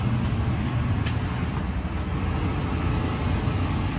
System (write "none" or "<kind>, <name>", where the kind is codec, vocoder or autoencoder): none